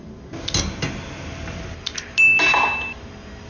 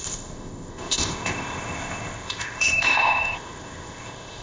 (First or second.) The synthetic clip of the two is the second